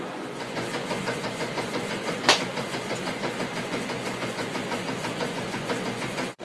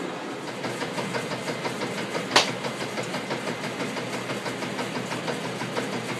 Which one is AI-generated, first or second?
first